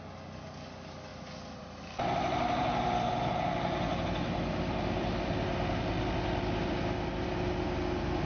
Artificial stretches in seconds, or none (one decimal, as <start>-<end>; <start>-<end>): 1.1-3.3; 3.9-7.5

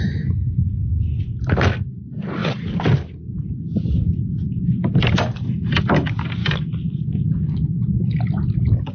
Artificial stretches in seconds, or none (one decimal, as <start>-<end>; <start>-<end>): 2.4-5.8

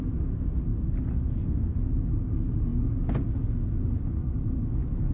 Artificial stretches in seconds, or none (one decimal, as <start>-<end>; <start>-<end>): none

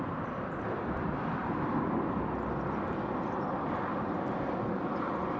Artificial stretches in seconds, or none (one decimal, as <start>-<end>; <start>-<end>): none